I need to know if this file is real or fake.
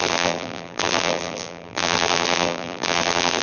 fake